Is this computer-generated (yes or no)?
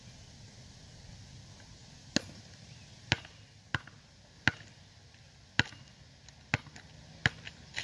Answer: no